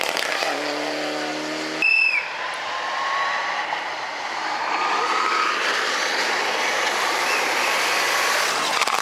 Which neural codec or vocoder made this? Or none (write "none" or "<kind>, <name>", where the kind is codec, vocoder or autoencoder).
vocoder, BigVGAN v2